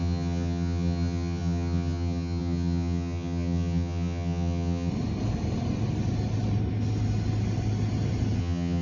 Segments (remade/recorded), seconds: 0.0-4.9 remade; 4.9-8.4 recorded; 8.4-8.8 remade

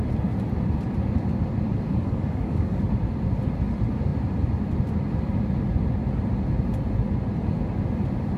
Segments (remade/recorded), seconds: 0.0-1.9 recorded; 1.9-2.8 remade; 2.8-8.4 recorded

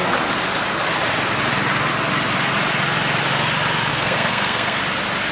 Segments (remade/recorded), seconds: 0.0-3.9 recorded; 3.9-4.8 remade; 4.8-5.3 recorded

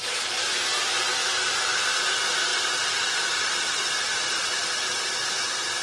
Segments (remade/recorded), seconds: 0.0-2.5 recorded; 2.5-4.5 remade; 4.5-5.8 recorded

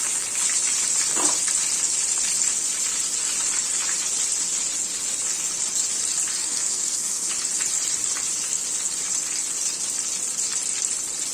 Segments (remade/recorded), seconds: 0.0-6.4 recorded; 6.4-7.3 remade; 7.3-11.3 recorded